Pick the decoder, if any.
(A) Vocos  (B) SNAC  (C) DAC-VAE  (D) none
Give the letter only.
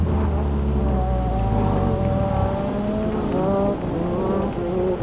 D